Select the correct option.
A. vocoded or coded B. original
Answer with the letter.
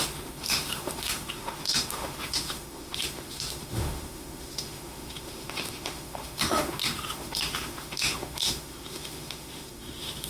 A